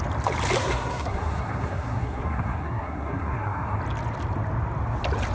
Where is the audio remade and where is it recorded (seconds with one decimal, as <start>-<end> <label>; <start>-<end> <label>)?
0.0-0.6 recorded; 0.6-3.8 remade; 3.8-5.3 recorded